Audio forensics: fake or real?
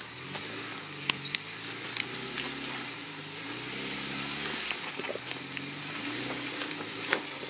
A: real